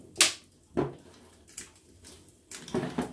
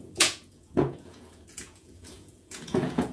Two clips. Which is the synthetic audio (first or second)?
second